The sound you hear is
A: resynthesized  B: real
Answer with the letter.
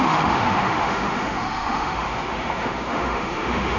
A